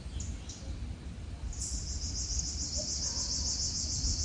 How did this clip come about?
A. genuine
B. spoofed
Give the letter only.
A